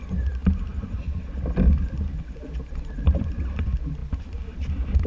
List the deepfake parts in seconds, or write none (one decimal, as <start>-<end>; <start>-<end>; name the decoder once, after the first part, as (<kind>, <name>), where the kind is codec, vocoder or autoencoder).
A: none